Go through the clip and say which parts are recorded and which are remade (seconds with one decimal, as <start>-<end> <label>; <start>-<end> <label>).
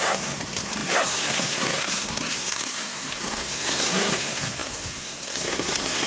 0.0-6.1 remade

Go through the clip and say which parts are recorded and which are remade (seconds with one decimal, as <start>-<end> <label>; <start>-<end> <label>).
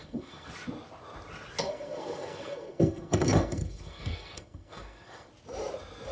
0.0-0.5 remade; 0.5-1.6 recorded; 1.6-5.3 remade; 5.3-6.1 recorded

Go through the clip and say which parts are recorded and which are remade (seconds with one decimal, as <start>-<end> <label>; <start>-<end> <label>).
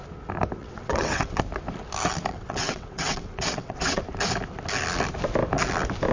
0.0-0.6 recorded; 0.6-1.4 remade; 1.4-2.3 recorded; 2.3-4.0 remade; 4.0-6.1 recorded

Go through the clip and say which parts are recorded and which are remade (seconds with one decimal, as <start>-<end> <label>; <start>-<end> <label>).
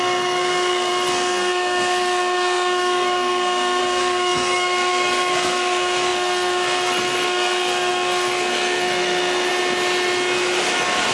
0.0-9.5 remade; 9.5-11.1 recorded